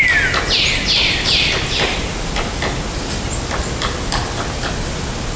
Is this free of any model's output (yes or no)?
yes